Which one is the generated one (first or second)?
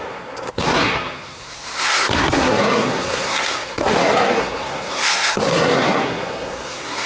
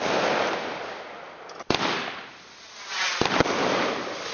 first